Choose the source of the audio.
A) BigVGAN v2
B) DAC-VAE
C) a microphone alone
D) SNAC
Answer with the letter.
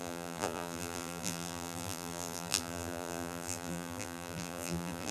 A